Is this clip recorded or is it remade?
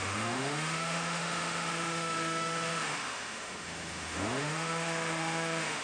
remade